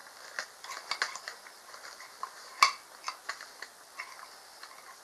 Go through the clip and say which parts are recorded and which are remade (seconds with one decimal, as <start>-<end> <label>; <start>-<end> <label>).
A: 0.0-5.0 recorded